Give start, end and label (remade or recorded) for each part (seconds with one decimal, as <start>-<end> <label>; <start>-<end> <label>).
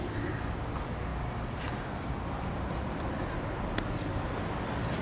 0.0-5.0 recorded